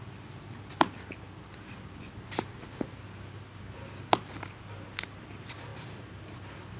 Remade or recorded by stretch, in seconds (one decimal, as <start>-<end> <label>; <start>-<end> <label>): 0.0-6.8 recorded